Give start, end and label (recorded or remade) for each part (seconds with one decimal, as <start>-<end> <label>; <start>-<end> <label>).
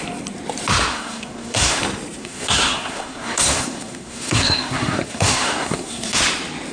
0.0-0.9 recorded; 0.9-1.8 remade; 1.8-2.2 recorded; 2.2-6.2 remade; 6.2-6.7 recorded